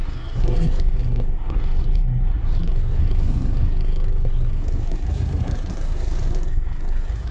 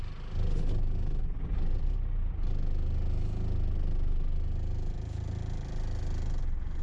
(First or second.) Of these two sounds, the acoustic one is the second